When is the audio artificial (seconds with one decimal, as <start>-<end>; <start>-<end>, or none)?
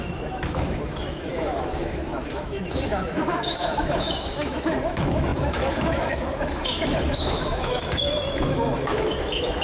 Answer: 0.0-9.6